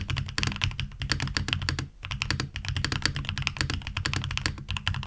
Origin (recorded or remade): recorded